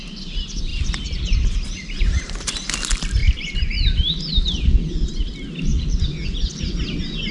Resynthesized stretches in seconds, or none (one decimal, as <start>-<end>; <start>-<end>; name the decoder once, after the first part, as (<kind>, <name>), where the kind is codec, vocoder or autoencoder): 0.7-2.3 (vocoder, BigVGAN v2); 3.2-4.1